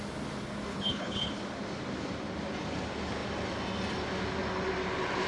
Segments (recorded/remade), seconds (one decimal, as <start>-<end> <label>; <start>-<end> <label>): 0.0-0.7 recorded; 0.7-1.3 remade; 1.3-5.3 recorded